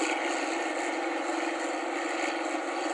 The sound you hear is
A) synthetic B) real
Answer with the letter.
B